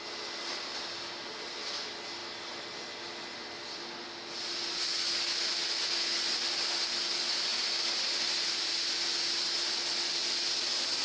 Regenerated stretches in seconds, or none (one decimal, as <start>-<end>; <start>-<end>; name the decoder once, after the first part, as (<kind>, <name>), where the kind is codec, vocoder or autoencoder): none